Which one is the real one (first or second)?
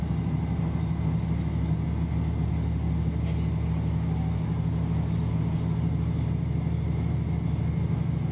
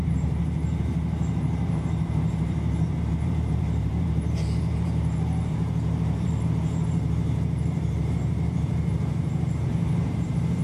first